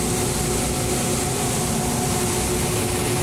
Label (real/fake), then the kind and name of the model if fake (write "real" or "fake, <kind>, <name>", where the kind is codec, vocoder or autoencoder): real